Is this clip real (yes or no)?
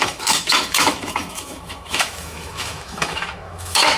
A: no